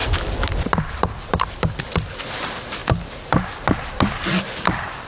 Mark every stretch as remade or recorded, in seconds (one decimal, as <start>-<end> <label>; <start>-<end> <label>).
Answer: 0.0-5.1 recorded